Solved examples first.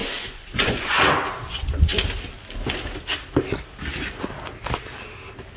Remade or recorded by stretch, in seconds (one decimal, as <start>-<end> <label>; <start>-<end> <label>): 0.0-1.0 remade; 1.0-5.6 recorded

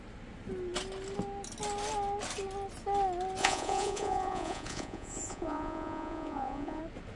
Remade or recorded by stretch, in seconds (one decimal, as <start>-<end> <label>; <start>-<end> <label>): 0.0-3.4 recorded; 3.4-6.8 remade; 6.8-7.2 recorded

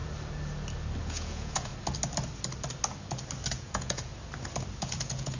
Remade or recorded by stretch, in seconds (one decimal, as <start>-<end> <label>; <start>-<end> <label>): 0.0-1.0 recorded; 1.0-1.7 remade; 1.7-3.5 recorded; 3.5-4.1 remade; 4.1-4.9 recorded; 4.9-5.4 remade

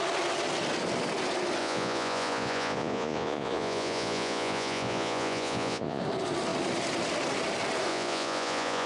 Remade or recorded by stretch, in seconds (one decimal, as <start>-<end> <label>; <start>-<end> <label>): 0.0-1.6 recorded; 1.6-6.0 remade; 6.0-7.9 recorded; 7.9-8.9 remade

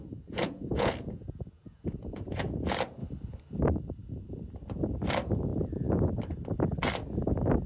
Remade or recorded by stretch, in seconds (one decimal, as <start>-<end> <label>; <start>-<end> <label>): 0.0-2.4 remade; 2.4-7.7 recorded